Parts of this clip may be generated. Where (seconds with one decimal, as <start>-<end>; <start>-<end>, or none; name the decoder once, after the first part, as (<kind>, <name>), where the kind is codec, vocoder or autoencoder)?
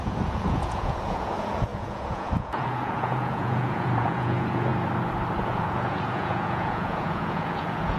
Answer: 0.0-4.7 (vocoder, Vocos); 5.4-8.0